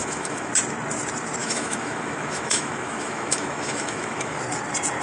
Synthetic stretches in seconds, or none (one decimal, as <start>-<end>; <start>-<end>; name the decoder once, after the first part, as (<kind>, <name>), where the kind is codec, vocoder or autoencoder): 0.0-0.5 (autoencoder, DAC-VAE); 1.4-4.4